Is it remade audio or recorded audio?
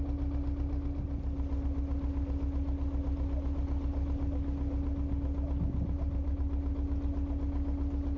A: recorded